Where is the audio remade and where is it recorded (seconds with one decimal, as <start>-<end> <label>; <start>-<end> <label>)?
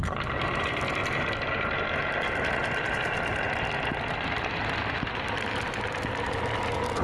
0.0-7.0 recorded